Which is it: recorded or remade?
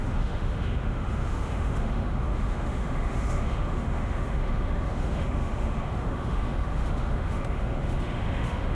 remade